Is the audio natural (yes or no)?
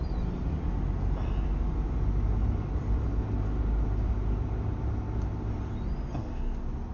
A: yes